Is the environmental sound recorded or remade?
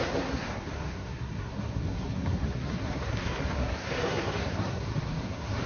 remade